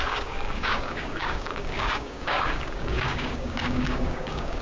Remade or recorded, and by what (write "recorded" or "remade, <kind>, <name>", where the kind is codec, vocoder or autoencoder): remade, codec, DAC